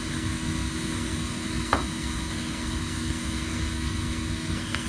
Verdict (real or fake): fake